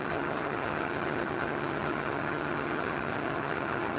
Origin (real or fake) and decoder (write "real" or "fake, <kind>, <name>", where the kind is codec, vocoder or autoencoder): fake, vocoder, HiFi-GAN